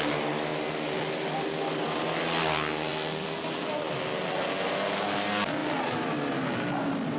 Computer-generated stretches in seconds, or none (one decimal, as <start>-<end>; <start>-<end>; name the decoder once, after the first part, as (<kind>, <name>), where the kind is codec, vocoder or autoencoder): none